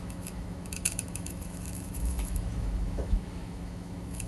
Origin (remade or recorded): remade